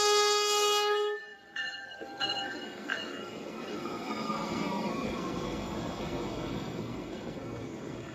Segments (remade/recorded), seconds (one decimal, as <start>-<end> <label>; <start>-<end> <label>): 0.0-8.1 remade